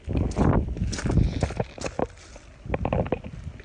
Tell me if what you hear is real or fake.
real